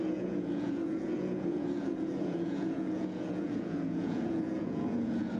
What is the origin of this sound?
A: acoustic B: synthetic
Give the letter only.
B